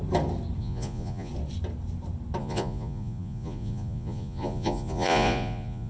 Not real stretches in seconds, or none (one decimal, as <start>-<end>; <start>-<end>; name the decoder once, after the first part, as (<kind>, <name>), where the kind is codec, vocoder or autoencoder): 0.6-1.3 (vocoder, Vocos); 2.4-5.9